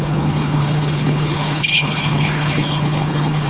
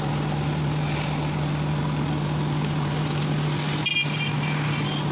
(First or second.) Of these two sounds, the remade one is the first